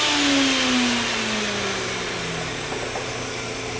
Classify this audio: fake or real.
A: real